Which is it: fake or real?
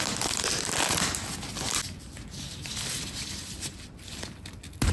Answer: real